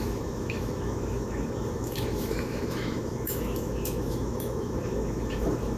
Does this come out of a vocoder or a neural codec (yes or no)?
yes